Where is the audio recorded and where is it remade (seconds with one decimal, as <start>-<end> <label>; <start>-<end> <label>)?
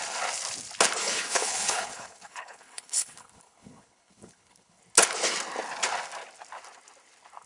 0.0-1.0 recorded; 1.0-4.8 remade; 4.8-7.5 recorded